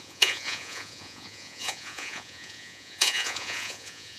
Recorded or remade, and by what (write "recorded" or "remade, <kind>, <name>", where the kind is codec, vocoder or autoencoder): remade, vocoder, Vocos